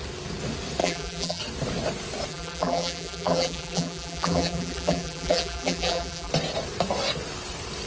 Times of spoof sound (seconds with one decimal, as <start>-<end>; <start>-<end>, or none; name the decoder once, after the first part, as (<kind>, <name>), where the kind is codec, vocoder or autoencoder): 0.8-1.4 (vocoder, BigVGAN v2); 2.3-6.3